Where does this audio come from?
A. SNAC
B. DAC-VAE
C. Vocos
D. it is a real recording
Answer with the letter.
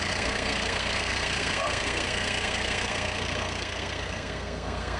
A